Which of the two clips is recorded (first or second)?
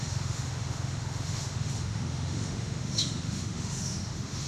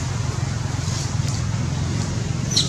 second